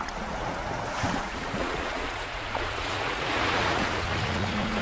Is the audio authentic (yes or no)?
no